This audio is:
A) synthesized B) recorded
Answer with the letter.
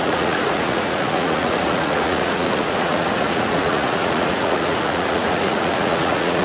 A